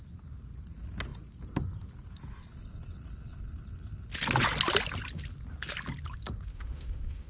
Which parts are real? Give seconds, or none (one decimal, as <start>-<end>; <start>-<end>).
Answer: 0.0-6.5